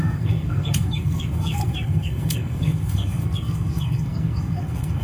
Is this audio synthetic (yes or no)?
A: yes